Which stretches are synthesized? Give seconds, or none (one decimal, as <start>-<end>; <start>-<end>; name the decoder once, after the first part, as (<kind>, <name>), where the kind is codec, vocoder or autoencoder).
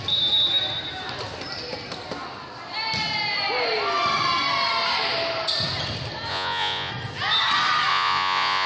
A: 6.3-6.9 (vocoder, Vocos); 7.9-8.7